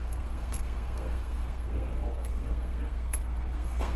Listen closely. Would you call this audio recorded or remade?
remade